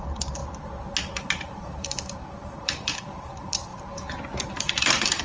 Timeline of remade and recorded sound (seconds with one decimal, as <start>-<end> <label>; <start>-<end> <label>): 0.0-0.4 remade; 0.4-1.0 recorded; 1.0-3.7 remade; 3.7-4.4 recorded; 4.4-5.2 remade